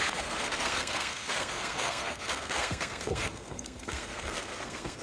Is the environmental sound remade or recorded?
remade